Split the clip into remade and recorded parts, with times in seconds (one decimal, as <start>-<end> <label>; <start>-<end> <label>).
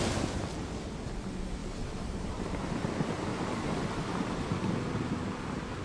0.0-1.6 recorded; 1.6-2.9 remade; 2.9-3.3 recorded; 3.3-4.3 remade; 4.3-5.8 recorded